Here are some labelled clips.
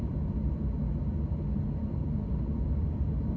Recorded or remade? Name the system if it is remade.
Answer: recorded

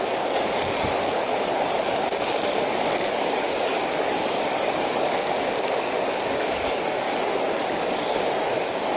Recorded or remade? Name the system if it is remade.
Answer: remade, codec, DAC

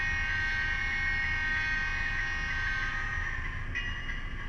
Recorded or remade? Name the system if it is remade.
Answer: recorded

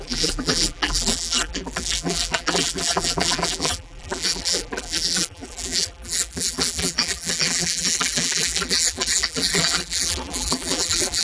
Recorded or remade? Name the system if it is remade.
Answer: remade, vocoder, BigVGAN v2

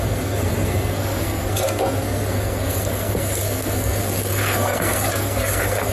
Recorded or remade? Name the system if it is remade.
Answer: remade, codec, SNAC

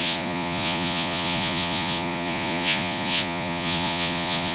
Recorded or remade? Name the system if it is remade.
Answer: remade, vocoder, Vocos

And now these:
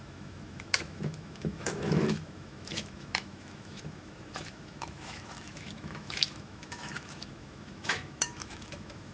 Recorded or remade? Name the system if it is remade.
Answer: remade, autoencoder, DAC-VAE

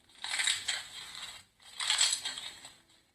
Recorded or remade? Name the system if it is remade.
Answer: recorded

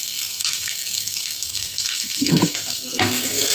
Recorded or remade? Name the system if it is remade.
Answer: remade, codec, SNAC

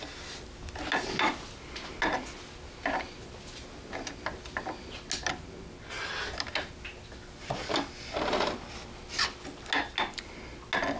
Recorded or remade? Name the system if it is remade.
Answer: recorded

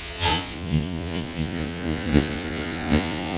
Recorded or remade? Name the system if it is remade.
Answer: remade, vocoder, Vocos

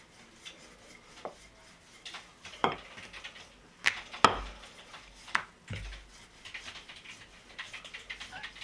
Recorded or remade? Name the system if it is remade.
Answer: recorded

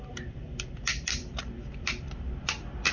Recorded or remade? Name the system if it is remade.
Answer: remade, vocoder, BigVGAN v2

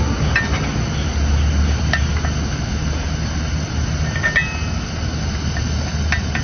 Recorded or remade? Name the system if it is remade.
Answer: recorded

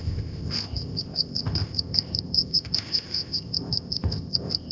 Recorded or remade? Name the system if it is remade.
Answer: remade, codec, ZipCodec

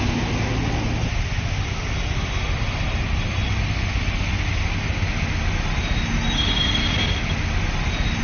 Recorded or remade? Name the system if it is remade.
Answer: recorded